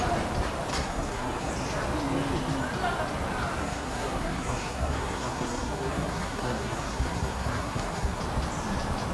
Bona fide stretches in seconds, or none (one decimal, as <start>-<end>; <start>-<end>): 0.0-0.7; 1.5-3.6; 8.2-9.1